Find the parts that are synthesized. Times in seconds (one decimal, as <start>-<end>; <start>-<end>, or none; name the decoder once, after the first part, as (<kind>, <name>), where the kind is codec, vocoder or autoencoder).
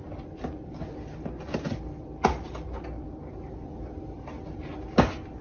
none